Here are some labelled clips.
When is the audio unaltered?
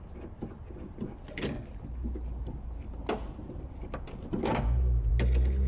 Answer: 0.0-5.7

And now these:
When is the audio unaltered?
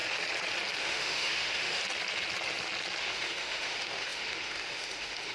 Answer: 0.0-0.8; 1.8-3.0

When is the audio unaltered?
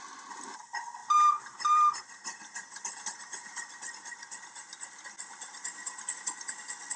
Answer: 0.0-1.0; 2.0-7.0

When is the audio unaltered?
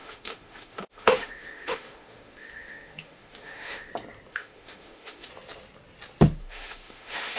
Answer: 3.9-4.3; 5.3-6.4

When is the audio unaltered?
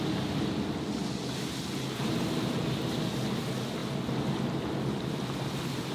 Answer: 0.0-5.9